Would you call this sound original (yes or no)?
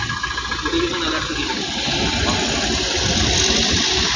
yes